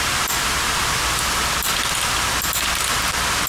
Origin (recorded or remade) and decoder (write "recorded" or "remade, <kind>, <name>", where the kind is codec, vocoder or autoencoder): recorded